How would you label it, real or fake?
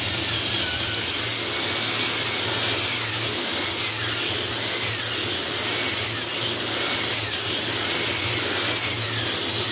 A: real